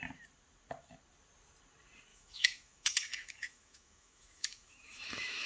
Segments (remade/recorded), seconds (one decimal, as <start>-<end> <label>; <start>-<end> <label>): 0.0-2.1 recorded; 2.1-5.5 remade